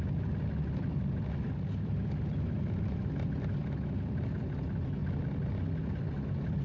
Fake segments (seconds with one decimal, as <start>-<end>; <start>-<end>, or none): none